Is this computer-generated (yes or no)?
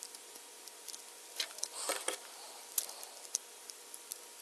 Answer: no